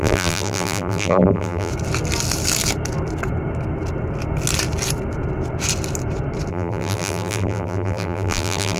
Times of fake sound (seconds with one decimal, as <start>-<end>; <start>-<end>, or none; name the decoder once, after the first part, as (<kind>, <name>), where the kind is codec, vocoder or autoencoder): 0.0-1.7 (vocoder, BigVGAN v2); 6.5-8.8